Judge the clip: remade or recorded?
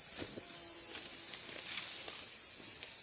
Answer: recorded